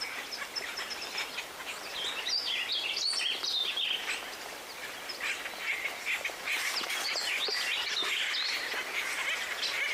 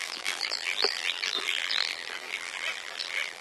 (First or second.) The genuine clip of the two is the first